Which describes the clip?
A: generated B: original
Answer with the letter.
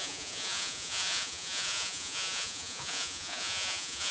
A